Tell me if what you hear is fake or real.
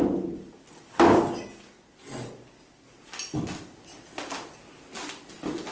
real